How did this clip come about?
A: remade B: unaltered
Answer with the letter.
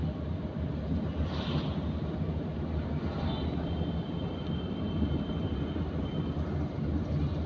B